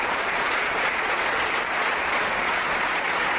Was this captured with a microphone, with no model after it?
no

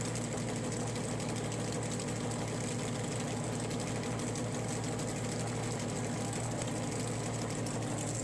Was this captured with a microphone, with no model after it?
yes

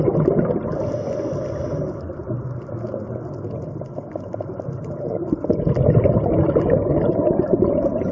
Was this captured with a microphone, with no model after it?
yes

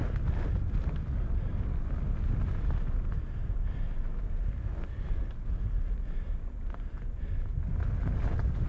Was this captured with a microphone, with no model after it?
yes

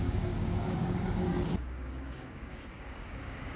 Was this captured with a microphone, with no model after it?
no